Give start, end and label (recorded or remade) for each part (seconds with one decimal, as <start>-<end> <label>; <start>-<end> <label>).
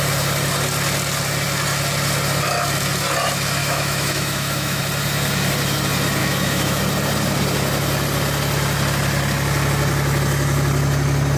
0.0-3.6 recorded; 3.6-4.8 remade; 4.8-6.2 recorded; 6.2-6.8 remade; 6.8-11.4 recorded